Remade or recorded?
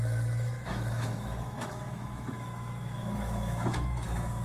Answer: remade